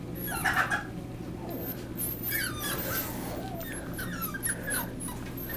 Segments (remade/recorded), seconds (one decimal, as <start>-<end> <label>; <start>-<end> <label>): 0.0-5.6 recorded